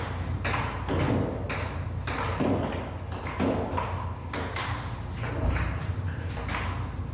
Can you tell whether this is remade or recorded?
recorded